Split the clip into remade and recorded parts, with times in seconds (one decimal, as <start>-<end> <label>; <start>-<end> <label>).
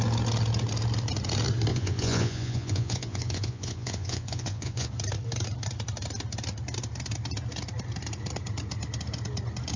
0.0-1.7 recorded; 1.7-4.9 remade; 4.9-9.8 recorded